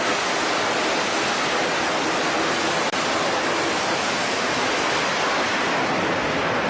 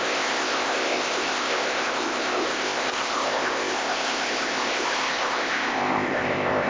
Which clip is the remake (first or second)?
second